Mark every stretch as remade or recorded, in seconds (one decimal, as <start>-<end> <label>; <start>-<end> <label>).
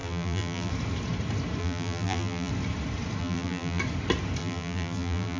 0.0-0.7 remade; 0.7-1.6 recorded; 1.6-2.5 remade; 2.5-3.2 recorded; 3.2-3.8 remade; 3.8-4.4 recorded; 4.4-5.4 remade